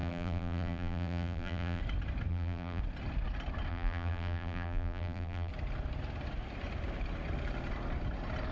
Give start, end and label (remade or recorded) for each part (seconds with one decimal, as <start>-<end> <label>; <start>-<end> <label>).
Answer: 0.0-1.8 remade; 1.8-2.3 recorded; 2.3-2.8 remade; 2.8-3.7 recorded; 3.7-5.5 remade; 5.5-8.5 recorded